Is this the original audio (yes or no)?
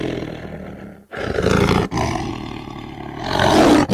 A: yes